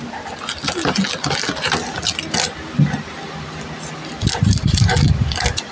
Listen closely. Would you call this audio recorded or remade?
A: recorded